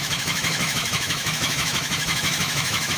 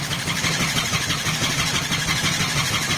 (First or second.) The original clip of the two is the second